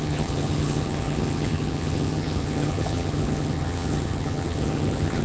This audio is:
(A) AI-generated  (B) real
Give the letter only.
A